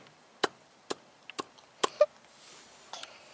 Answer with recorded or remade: recorded